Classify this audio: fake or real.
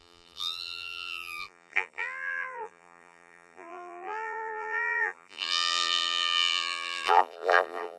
fake